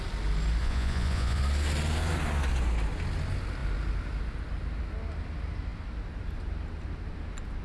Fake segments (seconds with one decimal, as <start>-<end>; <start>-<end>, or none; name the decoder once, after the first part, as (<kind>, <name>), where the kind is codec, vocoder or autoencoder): 0.6-1.4 (vocoder, Vocos)